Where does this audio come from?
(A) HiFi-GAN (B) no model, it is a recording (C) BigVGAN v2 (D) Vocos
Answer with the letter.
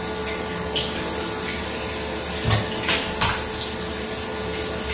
B